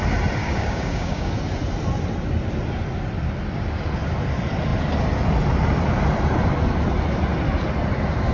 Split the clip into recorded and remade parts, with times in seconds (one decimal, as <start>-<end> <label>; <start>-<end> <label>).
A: 0.0-0.4 recorded; 0.4-1.3 remade; 1.3-8.3 recorded